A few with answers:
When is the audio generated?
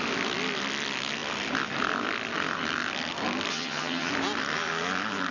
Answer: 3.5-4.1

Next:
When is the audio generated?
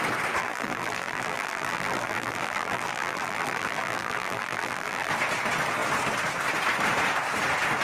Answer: 0.4-5.1